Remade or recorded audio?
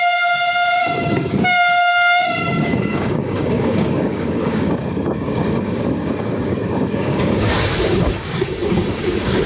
remade